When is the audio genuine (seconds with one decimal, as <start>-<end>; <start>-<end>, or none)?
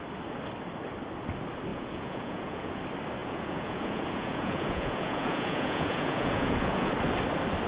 0.0-1.7; 2.8-3.2; 6.9-7.7